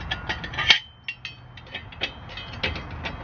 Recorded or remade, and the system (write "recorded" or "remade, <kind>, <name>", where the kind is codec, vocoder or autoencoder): recorded